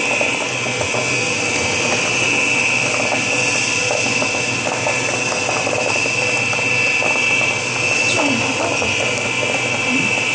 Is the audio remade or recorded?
recorded